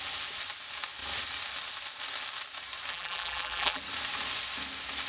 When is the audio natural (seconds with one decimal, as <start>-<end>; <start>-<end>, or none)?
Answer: 0.0-2.9; 3.8-5.1